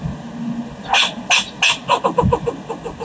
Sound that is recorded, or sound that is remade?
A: recorded